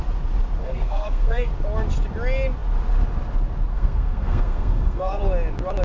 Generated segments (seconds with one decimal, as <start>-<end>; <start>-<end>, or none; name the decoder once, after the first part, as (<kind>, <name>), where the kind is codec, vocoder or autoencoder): 0.6-1.5 (codec, SNAC); 3.7-5.2